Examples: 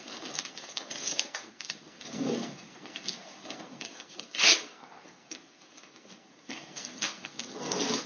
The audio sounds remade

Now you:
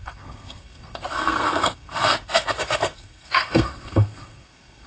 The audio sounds remade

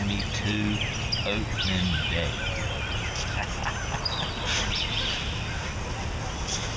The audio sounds recorded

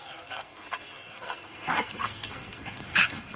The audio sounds remade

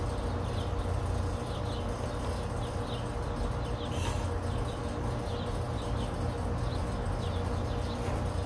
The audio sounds recorded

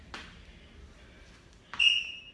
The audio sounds recorded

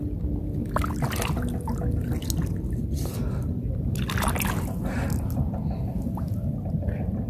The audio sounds recorded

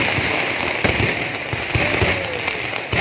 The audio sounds recorded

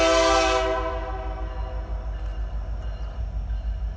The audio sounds recorded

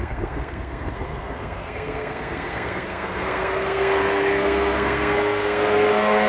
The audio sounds remade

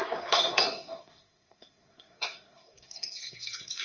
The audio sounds remade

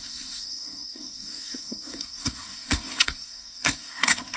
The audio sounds remade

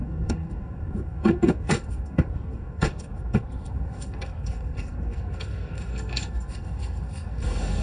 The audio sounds remade